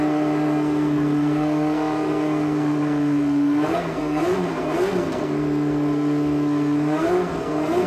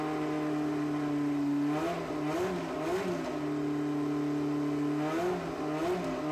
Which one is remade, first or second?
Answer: first